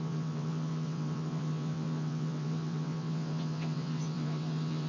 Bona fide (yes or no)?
no